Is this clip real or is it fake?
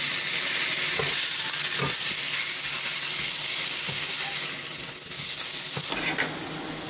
real